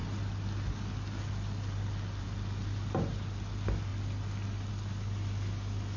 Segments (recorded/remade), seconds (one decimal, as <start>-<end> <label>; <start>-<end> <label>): 0.0-6.0 recorded